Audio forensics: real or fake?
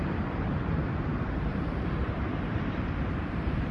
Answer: fake